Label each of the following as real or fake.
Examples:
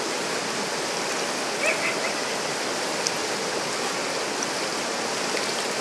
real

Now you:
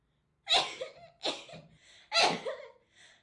real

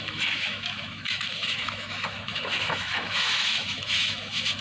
fake